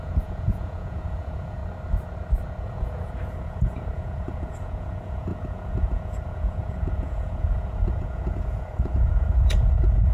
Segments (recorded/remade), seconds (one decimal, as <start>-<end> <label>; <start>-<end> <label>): 0.0-1.6 remade; 1.6-2.6 recorded; 2.6-10.1 remade